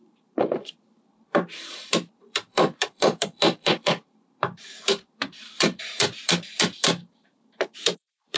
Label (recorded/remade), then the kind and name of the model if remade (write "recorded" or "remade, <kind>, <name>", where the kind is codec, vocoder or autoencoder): remade, vocoder, BigVGAN v2